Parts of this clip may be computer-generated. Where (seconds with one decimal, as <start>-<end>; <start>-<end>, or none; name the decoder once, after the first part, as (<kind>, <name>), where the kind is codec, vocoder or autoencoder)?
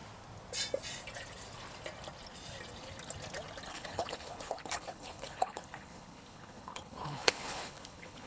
3.7-8.3 (codec, HILCodec)